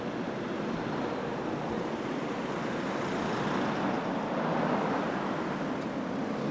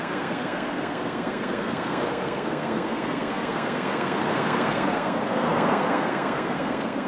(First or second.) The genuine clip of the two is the first